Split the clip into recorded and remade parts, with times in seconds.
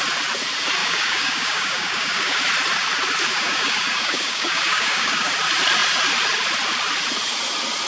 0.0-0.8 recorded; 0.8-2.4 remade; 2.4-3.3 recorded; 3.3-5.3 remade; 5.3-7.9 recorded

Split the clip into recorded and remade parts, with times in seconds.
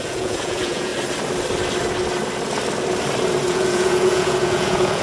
0.0-0.9 remade; 0.9-3.5 recorded; 3.5-5.0 remade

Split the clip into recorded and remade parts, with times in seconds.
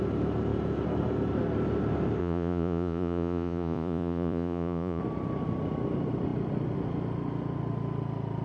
0.0-2.2 recorded; 2.2-5.0 remade; 5.0-8.4 recorded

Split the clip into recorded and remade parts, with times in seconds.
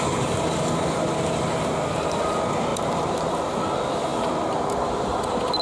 0.0-2.7 recorded; 2.7-3.2 remade; 3.2-5.6 recorded